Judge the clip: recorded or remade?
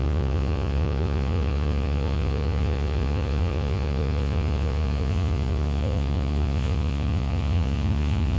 remade